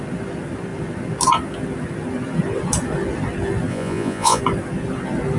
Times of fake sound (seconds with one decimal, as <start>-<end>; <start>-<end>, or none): 3.7-4.4